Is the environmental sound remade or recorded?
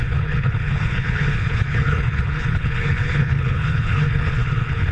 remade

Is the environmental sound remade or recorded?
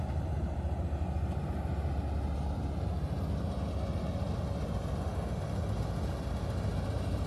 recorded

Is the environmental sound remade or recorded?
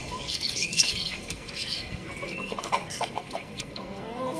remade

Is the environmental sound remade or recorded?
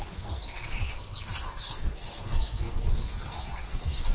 remade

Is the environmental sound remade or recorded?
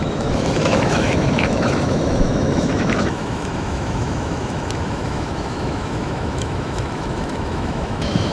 remade